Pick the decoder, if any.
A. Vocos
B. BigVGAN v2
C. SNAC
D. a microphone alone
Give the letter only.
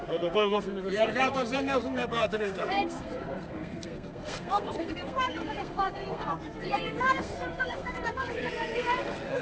C